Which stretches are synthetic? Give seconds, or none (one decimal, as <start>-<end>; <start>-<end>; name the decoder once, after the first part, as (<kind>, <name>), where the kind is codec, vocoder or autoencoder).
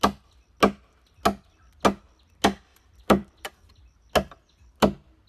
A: 2.7-4.1 (vocoder, BigVGAN v2)